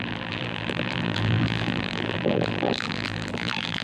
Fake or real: fake